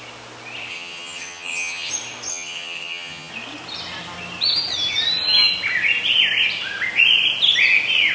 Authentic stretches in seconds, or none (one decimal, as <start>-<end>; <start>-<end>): 0.0-0.7; 1.9-2.3; 3.3-8.1